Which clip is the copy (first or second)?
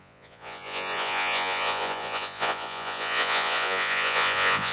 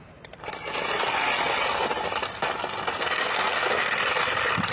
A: first